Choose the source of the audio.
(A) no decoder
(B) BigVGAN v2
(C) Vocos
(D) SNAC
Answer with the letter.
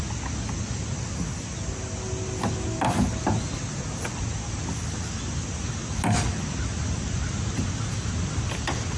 A